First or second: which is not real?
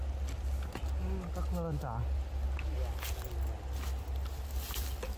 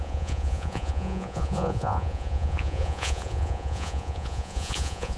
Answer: second